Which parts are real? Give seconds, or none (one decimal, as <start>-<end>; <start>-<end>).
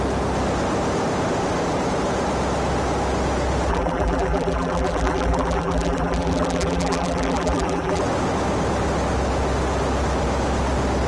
0.0-3.7; 8.0-11.1